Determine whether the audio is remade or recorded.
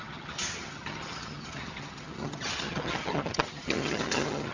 remade